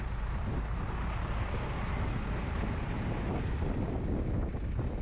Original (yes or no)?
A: yes